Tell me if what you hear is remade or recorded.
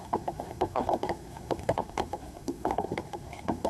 remade